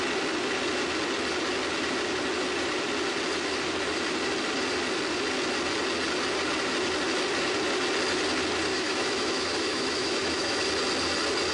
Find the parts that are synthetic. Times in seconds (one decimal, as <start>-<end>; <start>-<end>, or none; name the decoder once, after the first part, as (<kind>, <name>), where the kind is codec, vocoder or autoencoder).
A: 8.7-10.6 (autoencoder, DAC-VAE)